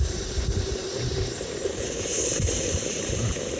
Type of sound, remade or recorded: remade